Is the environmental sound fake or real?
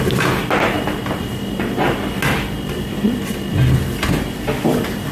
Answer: real